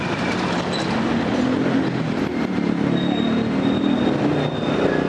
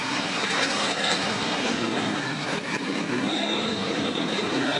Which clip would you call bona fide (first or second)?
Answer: first